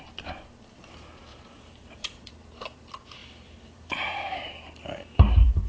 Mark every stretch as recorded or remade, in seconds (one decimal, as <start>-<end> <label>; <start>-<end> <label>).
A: 0.0-1.3 recorded; 1.3-2.3 remade; 2.3-3.2 recorded; 3.2-4.5 remade; 4.5-5.7 recorded